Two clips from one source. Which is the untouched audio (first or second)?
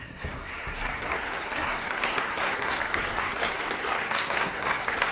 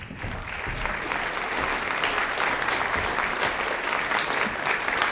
second